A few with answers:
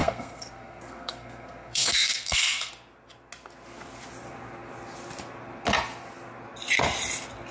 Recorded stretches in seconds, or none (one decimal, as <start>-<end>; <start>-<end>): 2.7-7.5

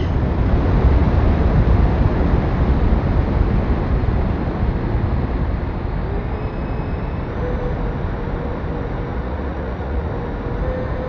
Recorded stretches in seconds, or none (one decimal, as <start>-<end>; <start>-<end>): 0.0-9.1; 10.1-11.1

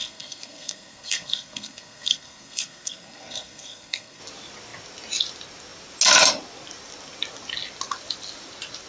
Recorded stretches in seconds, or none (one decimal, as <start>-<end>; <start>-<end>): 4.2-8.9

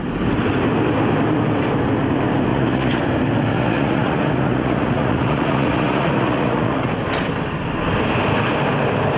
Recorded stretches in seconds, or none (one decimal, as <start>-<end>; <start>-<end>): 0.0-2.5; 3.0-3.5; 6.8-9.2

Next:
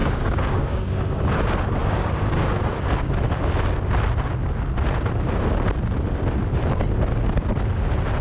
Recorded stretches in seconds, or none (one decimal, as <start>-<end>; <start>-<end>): 1.1-1.8; 2.7-8.2

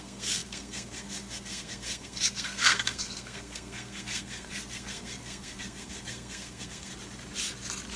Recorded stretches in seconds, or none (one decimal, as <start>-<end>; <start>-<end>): 6.9-8.0

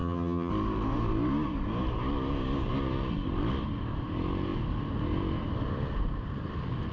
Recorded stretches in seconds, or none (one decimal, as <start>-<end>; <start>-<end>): 0.5-6.9